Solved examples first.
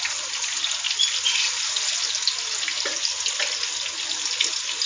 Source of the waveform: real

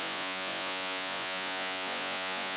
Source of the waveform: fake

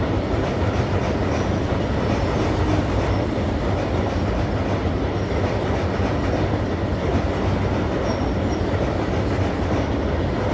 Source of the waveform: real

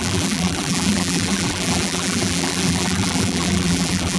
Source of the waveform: fake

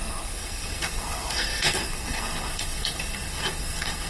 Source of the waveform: fake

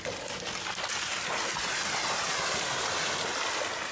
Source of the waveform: real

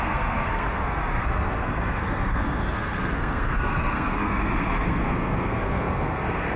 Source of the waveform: fake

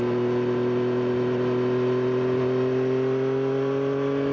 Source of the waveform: real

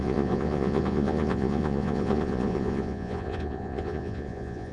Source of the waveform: fake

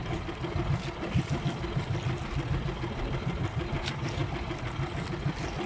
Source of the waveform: real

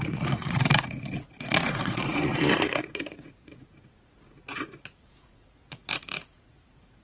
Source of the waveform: fake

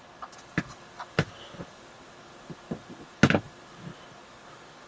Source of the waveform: real